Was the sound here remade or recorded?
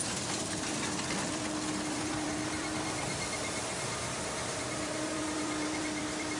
remade